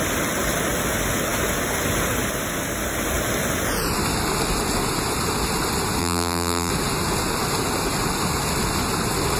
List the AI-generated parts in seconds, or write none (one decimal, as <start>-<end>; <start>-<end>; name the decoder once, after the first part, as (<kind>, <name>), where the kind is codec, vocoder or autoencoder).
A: 6.0-6.7 (vocoder, BigVGAN v2)